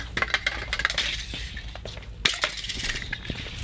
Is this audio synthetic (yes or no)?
no